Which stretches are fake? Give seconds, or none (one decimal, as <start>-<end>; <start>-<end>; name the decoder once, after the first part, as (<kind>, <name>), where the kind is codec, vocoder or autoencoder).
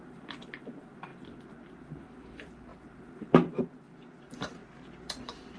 0.0-1.1 (vocoder, BigVGAN v2); 2.0-4.6